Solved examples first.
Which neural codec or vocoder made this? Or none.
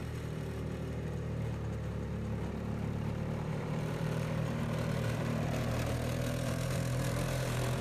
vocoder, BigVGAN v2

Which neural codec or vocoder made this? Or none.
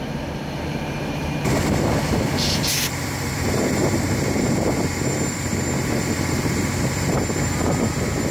vocoder, BigVGAN v2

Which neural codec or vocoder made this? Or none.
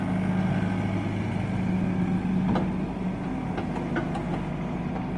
none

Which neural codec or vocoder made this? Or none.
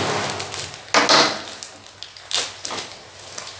none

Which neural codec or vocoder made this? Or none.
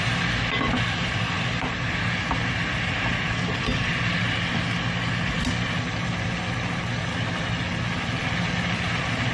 none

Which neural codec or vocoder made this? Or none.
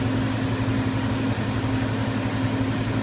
none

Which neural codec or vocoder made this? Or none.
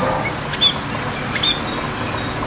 none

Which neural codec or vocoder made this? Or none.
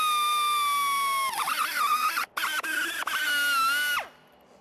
none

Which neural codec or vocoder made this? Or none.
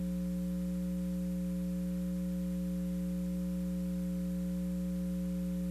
none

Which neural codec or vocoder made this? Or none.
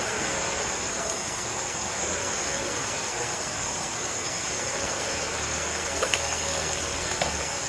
codec, SNAC